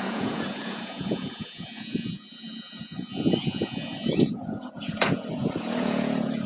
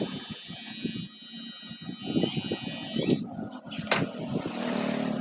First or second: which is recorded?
second